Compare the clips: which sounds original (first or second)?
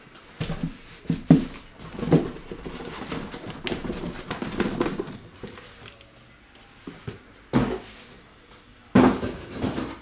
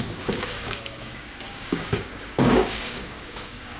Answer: first